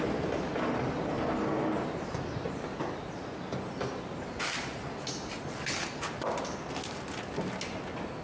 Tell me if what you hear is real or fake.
real